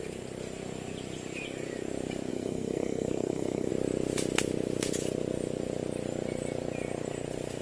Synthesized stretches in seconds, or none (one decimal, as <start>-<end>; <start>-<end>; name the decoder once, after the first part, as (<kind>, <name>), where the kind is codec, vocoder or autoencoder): 2.3-3.7 (codec, SNAC)